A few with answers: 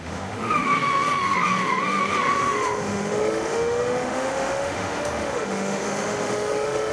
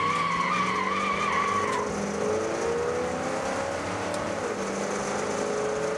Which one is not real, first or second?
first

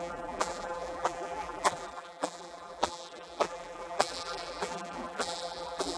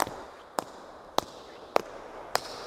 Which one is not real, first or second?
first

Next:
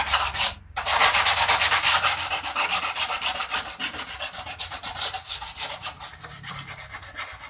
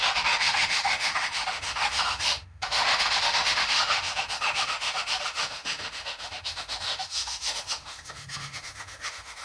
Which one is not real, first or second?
second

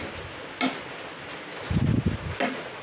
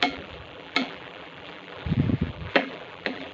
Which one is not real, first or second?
second